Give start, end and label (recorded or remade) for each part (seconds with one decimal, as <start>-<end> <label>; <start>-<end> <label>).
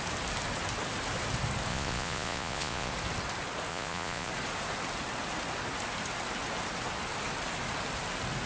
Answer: 0.0-1.7 recorded; 1.7-2.9 remade; 2.9-3.7 recorded; 3.7-4.3 remade; 4.3-8.5 recorded